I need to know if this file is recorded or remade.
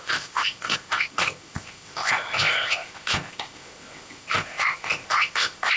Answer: remade